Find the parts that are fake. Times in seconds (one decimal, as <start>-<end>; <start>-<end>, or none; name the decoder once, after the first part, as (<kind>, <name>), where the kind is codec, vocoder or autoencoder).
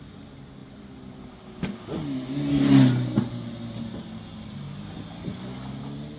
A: none